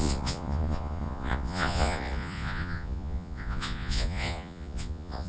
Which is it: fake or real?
fake